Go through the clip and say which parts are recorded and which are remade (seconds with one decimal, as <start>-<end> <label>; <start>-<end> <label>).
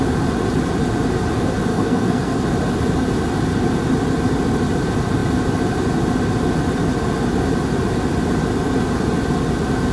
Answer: 0.0-1.7 recorded; 1.7-2.4 remade; 2.4-9.9 recorded